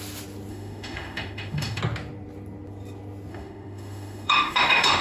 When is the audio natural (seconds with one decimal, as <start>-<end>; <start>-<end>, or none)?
0.0-0.5; 1.8-3.3